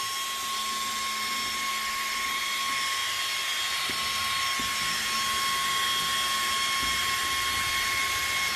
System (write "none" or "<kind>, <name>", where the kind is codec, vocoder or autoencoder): none